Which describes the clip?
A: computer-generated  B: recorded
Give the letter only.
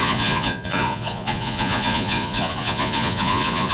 A